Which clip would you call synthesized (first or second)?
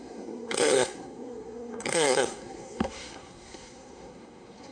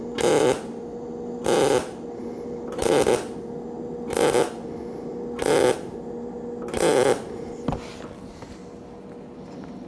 first